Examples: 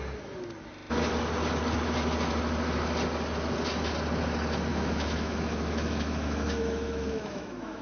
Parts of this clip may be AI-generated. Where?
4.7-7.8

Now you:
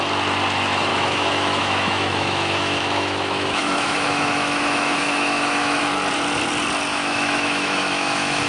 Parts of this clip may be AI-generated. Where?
0.9-5.8; 6.9-8.5

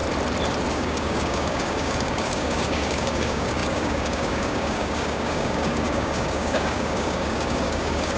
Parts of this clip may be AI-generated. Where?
0.7-8.2